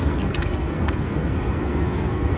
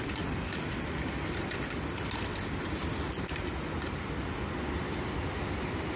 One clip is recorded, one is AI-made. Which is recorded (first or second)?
second